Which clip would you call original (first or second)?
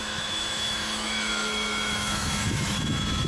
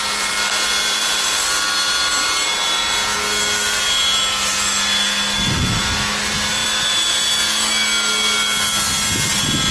second